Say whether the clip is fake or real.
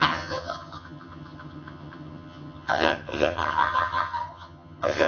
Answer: fake